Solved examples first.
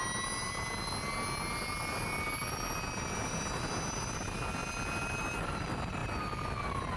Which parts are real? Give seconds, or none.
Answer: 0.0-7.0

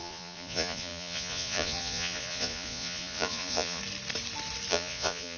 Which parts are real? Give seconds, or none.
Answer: 3.8-4.7

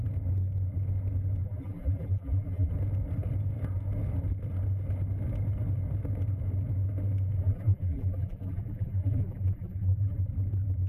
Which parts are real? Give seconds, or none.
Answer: 0.0-1.4; 2.7-7.4; 10.2-10.9

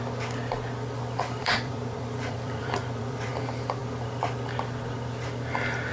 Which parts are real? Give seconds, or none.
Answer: 0.0-1.4; 3.3-5.9